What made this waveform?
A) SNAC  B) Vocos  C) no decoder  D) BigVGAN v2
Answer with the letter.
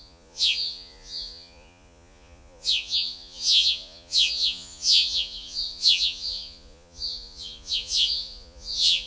B